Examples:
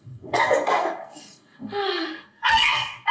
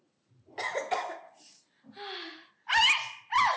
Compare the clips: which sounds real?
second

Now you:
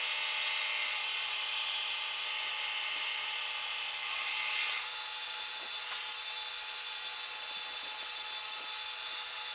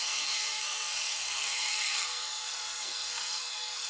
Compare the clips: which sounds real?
first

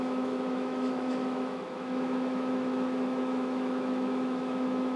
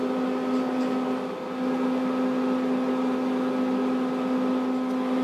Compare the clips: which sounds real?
second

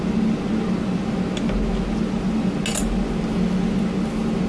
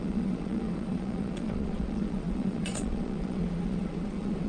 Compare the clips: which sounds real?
first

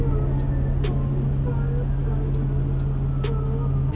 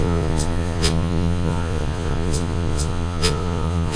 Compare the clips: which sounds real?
first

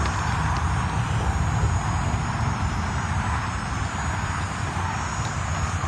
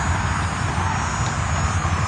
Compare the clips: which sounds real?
second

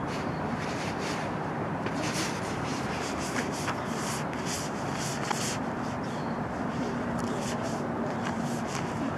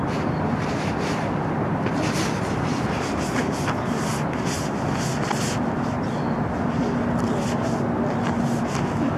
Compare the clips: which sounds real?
second